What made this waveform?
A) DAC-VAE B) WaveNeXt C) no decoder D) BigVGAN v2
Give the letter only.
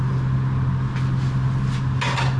C